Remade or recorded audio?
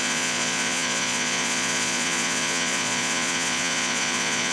remade